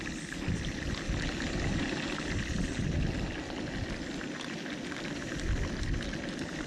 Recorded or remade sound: recorded